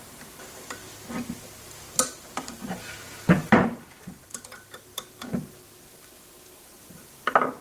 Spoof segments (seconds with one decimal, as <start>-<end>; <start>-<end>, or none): 0.0-0.9; 2.7-4.3; 6.5-7.6